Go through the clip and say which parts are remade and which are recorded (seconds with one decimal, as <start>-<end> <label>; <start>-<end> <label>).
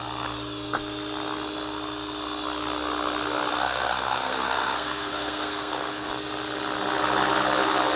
0.0-3.5 recorded; 3.5-6.1 remade; 6.1-8.0 recorded